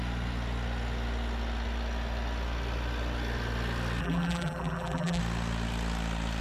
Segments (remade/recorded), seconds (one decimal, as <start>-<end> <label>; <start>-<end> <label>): 0.0-4.0 recorded; 4.0-5.2 remade; 5.2-6.4 recorded